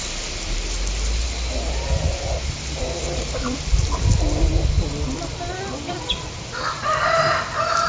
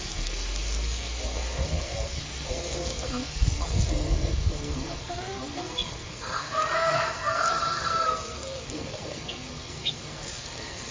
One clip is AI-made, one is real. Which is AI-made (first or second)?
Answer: second